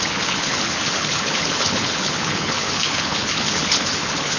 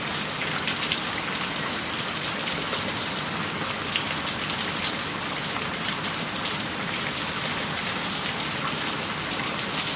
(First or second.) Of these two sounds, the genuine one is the second